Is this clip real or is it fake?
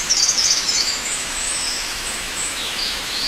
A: fake